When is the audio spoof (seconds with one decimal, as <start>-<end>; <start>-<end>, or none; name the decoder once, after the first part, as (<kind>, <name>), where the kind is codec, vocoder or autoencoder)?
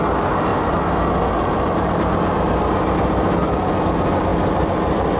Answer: none